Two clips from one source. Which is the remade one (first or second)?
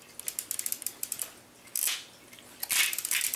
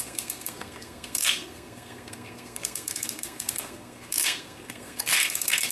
second